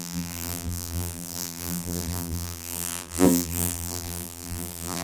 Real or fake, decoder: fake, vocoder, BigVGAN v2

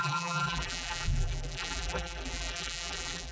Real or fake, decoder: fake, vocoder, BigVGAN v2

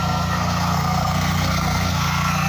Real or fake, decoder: fake, codec, SNAC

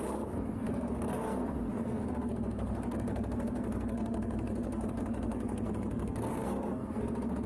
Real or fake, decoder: fake, codec, SNAC